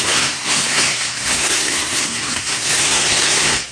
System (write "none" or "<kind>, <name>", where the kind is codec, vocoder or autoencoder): codec, SNAC